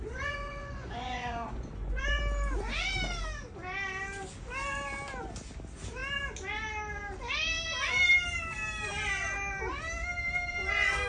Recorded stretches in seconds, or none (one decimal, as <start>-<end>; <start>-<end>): 2.2-11.1